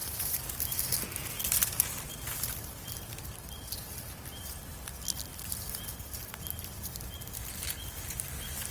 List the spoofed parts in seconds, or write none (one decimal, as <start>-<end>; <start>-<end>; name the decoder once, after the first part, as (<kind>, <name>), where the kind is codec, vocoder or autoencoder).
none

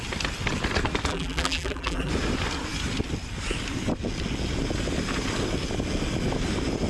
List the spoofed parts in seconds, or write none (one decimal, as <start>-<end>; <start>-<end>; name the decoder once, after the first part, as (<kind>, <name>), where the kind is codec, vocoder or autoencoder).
1.1-2.1 (vocoder, BigVGAN v2)

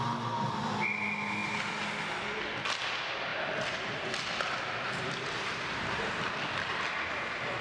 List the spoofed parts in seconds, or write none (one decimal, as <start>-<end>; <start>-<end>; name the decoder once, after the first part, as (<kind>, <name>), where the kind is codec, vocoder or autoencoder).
3.3-6.2 (vocoder, BigVGAN v2)

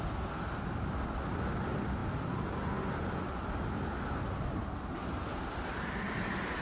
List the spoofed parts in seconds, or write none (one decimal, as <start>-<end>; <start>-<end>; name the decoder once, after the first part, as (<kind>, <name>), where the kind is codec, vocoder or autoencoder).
5.3-6.6 (vocoder, BigVGAN v2)

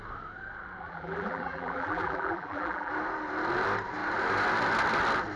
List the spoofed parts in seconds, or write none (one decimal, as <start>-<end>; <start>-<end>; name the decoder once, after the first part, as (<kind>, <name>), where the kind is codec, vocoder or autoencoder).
0.8-2.9 (vocoder, BigVGAN v2)

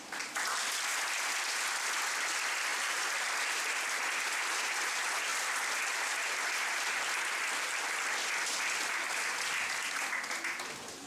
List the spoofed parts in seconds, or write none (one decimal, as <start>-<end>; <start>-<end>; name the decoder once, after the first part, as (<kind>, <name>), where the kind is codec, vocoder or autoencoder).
2.7-3.3 (vocoder, BigVGAN v2)

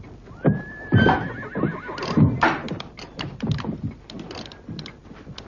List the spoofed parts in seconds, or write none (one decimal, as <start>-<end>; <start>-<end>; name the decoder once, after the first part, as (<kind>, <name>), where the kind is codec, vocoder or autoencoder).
2.6-3.8 (vocoder, BigVGAN v2)